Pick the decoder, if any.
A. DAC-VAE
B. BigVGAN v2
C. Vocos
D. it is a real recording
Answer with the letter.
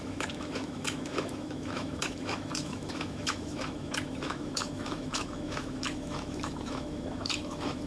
A